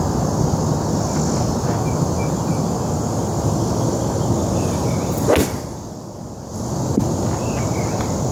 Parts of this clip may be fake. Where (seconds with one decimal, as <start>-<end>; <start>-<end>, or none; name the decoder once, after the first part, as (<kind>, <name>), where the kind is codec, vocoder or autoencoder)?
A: 5.4-7.0 (vocoder, BigVGAN v2)